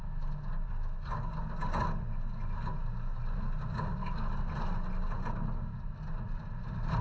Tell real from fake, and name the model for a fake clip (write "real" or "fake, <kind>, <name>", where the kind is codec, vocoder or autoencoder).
real